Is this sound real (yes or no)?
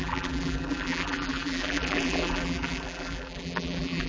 no